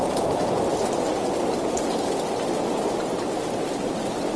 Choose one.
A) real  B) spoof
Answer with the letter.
A